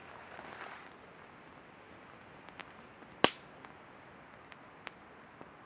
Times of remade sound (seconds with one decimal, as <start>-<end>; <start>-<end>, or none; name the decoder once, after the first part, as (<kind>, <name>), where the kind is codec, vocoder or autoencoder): none

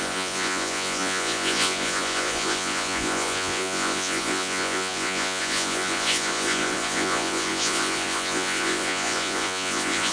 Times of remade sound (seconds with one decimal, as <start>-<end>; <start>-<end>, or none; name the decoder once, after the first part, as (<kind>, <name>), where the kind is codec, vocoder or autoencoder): 0.0-10.1 (vocoder, Vocos)

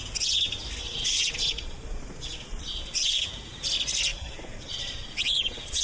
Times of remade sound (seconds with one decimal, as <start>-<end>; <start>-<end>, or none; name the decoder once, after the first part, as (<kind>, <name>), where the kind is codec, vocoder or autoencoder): 0.9-3.2 (vocoder, Vocos); 4.1-5.8

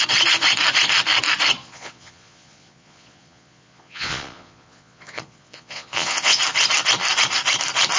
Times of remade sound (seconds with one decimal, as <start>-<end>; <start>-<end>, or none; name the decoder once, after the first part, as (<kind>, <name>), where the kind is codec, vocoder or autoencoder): 1.6-6.4 (vocoder, Vocos)

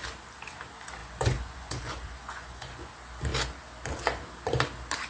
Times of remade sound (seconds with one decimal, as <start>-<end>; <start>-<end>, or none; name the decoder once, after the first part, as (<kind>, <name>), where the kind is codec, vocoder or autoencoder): 1.0-2.9 (vocoder, Vocos)

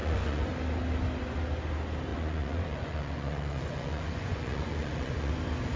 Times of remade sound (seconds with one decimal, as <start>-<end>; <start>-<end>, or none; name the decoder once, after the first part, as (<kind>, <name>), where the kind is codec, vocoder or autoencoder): 0.0-0.5 (vocoder, Vocos); 2.1-5.3